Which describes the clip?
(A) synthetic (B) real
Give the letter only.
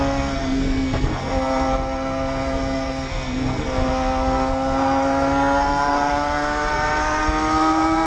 A